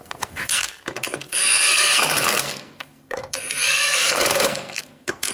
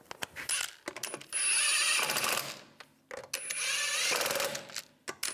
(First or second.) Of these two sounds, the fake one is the first